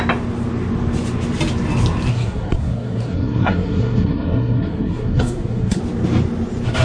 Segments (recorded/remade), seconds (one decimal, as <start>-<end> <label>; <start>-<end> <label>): 0.0-2.1 recorded; 2.1-5.8 remade; 5.8-6.8 recorded

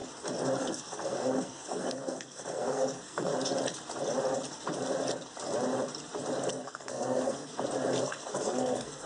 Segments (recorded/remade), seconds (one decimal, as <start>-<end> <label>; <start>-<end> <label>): 0.0-0.6 recorded; 0.6-3.3 remade; 3.3-6.5 recorded; 6.5-7.5 remade; 7.5-8.0 recorded; 8.0-9.1 remade

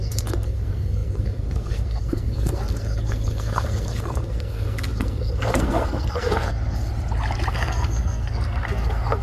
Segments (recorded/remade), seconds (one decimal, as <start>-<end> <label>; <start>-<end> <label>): 0.0-6.9 remade; 6.9-7.5 recorded; 7.5-9.2 remade

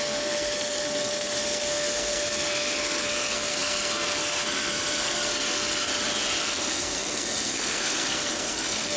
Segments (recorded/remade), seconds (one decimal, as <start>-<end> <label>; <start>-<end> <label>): 0.0-5.9 remade; 5.9-6.4 recorded; 6.4-9.0 remade

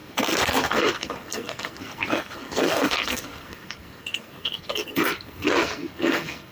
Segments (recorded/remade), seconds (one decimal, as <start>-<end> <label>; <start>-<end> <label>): 0.0-6.5 remade